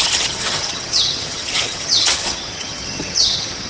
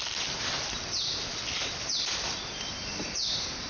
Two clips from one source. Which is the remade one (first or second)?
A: first